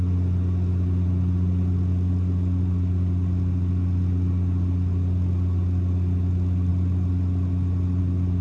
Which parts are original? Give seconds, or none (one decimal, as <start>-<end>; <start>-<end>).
0.0-8.4